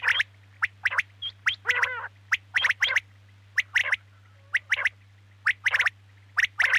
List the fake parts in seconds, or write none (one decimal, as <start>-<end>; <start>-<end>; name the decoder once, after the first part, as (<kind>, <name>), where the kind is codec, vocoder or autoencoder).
none

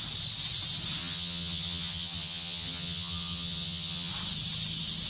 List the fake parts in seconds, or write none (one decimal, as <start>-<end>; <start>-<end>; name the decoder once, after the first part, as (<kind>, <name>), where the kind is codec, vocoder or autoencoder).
1.0-4.1 (vocoder, HiFi-GAN)